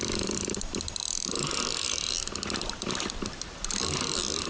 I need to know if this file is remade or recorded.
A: recorded